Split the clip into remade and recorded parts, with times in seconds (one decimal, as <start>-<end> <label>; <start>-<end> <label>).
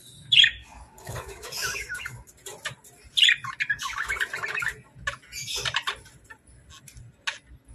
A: 0.0-0.6 recorded; 0.6-2.3 remade; 2.3-7.7 recorded